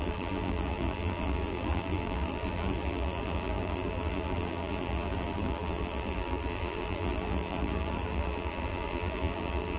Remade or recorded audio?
remade